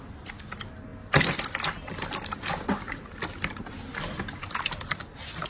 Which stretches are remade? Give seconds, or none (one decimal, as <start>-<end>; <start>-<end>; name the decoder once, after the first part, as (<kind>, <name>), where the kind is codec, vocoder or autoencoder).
none